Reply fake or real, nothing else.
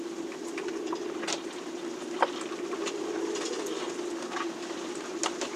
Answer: real